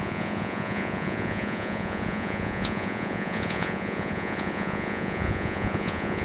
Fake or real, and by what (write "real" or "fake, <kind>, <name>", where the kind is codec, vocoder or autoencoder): fake, vocoder, Vocos